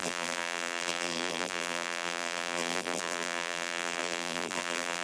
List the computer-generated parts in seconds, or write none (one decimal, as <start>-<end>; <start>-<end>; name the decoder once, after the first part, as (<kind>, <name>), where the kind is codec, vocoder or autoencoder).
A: 0.0-5.0 (vocoder, BigVGAN v2)